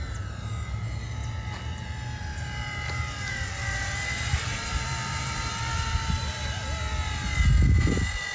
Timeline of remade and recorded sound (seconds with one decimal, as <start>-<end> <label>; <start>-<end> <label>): 0.0-1.2 remade; 1.2-1.7 recorded; 1.7-6.9 remade; 6.9-7.9 recorded; 7.9-8.3 remade